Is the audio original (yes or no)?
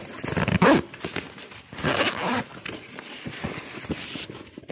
yes